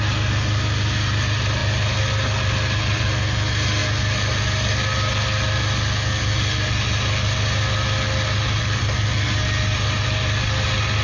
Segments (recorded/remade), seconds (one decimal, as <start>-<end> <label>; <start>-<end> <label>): 0.0-11.0 recorded